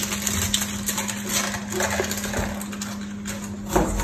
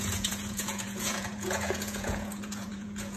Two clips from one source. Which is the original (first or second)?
first